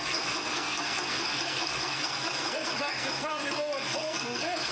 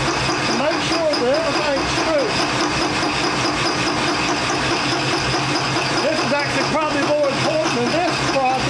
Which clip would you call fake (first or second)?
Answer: first